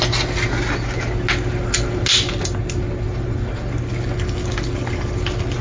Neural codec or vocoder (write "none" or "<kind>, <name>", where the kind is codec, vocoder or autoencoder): none